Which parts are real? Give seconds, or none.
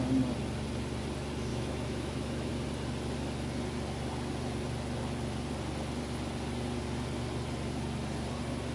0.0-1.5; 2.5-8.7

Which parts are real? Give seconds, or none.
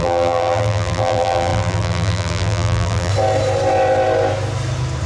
3.1-5.1